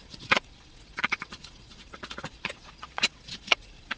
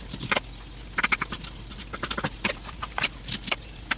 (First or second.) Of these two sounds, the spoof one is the first